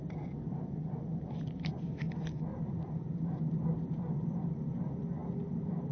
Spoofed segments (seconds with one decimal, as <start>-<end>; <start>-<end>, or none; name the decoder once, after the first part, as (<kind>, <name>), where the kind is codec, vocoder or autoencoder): 0.0-5.9 (vocoder, BigVGAN v2)

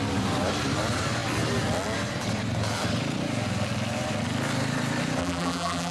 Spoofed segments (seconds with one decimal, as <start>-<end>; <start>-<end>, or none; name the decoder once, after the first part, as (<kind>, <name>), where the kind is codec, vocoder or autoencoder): 5.2-5.9 (vocoder, BigVGAN v2)